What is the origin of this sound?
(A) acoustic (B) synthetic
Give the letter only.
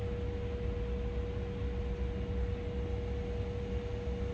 A